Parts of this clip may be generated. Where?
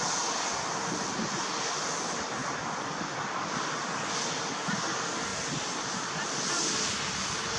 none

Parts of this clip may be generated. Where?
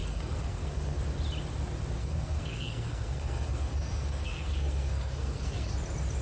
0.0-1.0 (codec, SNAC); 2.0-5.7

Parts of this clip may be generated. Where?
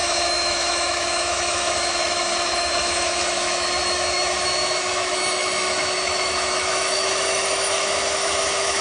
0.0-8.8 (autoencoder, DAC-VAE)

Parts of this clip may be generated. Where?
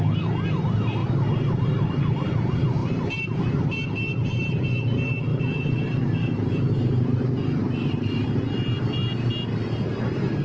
1.0-1.9 (vocoder, BigVGAN v2); 2.8-3.4; 7.6-8.1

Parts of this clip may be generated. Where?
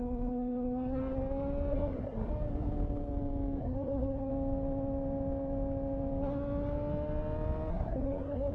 0.0-1.0 (codec, SNAC); 1.7-2.3; 3.6-4.3; 7.7-8.5